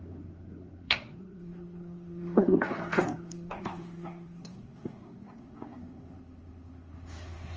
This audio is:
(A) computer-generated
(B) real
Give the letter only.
A